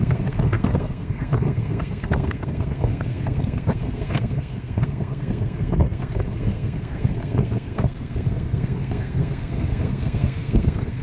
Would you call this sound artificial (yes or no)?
yes